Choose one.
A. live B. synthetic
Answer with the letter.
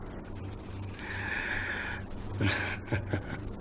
B